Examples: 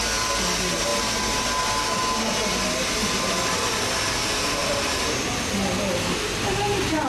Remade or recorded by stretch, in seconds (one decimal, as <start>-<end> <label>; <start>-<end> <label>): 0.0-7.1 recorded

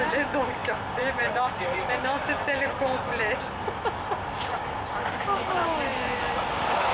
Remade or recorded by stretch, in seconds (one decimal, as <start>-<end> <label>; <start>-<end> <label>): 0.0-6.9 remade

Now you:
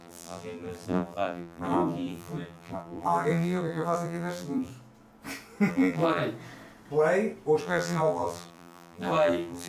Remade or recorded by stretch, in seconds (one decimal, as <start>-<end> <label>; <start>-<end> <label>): 0.0-4.7 remade; 4.7-5.7 recorded; 5.7-6.2 remade; 6.2-7.6 recorded; 7.6-9.7 remade

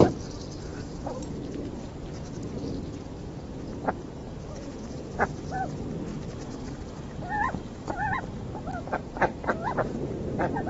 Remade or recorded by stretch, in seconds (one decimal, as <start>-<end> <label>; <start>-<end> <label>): 0.0-4.2 recorded; 4.2-4.8 remade; 4.8-6.1 recorded; 6.1-10.7 remade

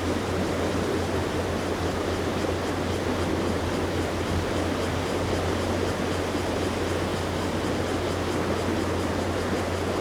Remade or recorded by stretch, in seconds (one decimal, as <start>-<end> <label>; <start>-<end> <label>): 0.0-10.0 recorded